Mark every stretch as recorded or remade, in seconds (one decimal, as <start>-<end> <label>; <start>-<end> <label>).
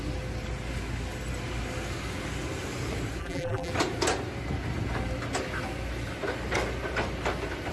0.0-3.2 recorded; 3.2-3.7 remade; 3.7-7.7 recorded